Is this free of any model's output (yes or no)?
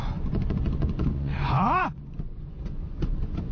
no